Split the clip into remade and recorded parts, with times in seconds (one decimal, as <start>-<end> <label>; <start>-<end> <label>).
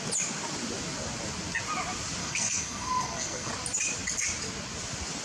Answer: 0.0-2.2 recorded; 2.2-3.5 remade; 3.5-5.2 recorded